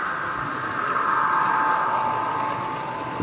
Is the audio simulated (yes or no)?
no